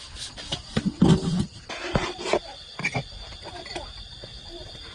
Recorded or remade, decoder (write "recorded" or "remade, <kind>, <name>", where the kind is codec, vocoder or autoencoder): recorded